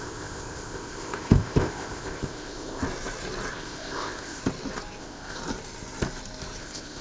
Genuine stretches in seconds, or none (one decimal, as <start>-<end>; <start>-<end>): 2.8-3.5; 4.4-5.0; 5.4-6.6